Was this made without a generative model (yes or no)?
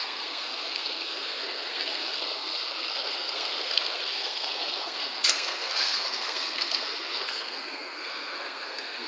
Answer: no